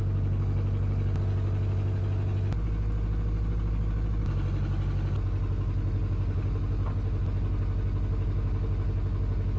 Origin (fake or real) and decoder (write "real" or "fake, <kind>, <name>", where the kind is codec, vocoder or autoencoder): real